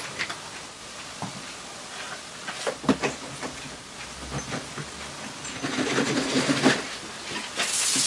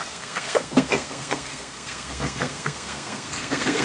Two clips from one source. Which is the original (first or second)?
first